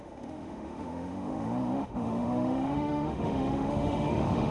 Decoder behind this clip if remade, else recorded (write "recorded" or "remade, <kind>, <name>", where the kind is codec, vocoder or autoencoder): remade, autoencoder, DAC-VAE